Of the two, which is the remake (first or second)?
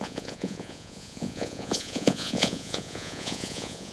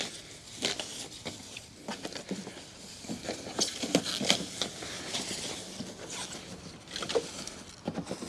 first